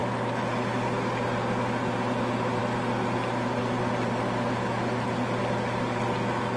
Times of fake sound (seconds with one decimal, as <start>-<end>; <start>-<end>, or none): none